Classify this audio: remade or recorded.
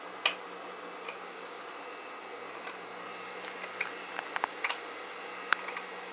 recorded